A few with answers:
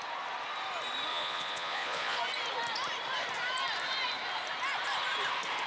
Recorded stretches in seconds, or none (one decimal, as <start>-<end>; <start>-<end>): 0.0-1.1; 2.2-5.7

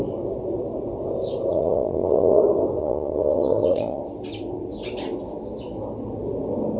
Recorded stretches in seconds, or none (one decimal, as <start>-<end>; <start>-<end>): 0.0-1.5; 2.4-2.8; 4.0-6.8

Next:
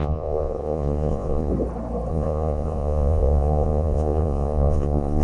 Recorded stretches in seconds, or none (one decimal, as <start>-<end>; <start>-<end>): 1.5-2.1